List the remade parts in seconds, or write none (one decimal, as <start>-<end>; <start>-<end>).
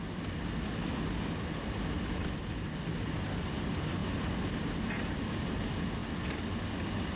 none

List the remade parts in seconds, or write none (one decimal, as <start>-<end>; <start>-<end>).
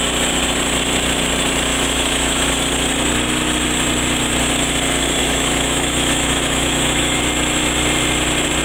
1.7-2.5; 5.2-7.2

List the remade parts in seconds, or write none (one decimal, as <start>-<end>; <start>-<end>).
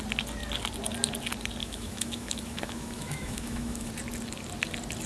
1.6-3.9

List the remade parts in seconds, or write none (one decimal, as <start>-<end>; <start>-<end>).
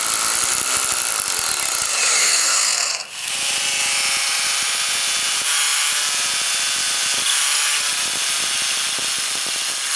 2.2-3.3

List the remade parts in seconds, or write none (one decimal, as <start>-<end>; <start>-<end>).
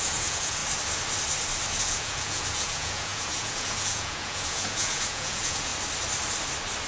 0.0-0.6; 1.8-5.7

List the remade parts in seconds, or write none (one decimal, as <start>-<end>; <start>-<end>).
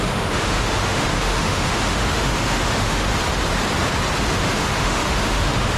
0.0-3.1; 4.2-5.8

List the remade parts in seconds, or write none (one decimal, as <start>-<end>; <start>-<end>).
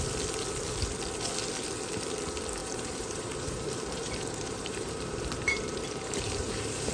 2.6-6.9